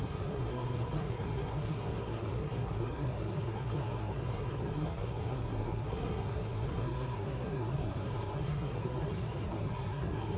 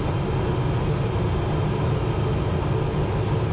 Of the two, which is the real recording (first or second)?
second